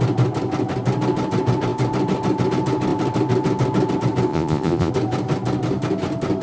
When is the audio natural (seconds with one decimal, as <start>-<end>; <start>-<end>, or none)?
0.0-4.3; 4.9-6.4